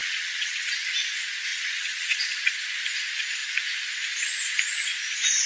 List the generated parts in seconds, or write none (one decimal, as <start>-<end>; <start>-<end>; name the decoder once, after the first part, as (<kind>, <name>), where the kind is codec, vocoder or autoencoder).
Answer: 0.0-0.9 (vocoder, Vocos); 1.5-2.5